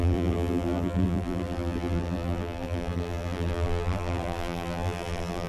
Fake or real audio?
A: fake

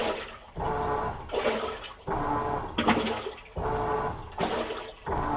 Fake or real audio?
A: real